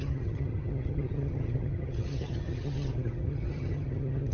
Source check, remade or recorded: remade